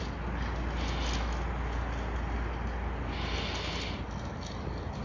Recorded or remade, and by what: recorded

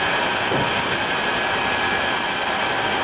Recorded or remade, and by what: recorded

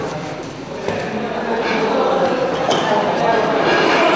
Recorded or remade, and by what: recorded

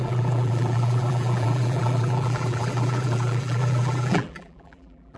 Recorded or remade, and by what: remade, vocoder, BigVGAN v2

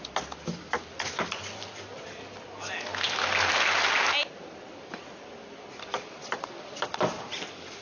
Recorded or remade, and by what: recorded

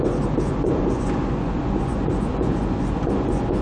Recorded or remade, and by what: remade, vocoder, Vocos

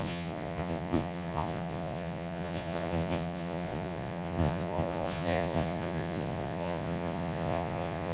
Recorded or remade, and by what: remade, vocoder, Vocos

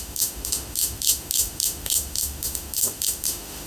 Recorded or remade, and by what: remade, autoencoder, DAC-VAE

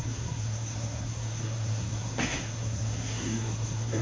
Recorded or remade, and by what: remade, codec, SNAC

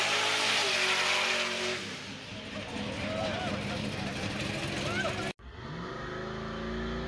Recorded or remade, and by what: recorded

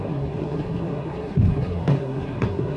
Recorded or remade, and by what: remade, codec, SNAC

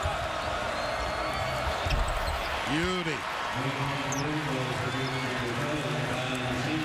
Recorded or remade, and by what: recorded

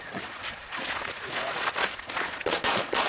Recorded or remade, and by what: remade, vocoder, Vocos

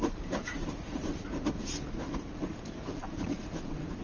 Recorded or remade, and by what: remade, vocoder, Vocos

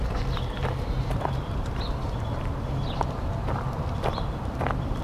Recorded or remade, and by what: remade, vocoder, BigVGAN v2